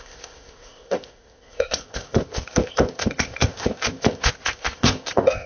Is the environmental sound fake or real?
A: fake